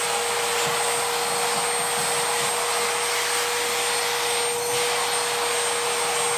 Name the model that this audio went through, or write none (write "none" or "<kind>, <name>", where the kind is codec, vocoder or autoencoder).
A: none